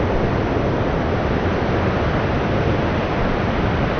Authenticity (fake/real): real